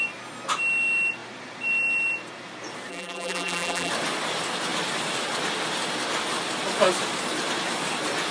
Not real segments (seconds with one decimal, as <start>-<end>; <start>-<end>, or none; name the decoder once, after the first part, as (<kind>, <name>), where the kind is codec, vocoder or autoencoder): 2.9-3.9 (vocoder, BigVGAN v2)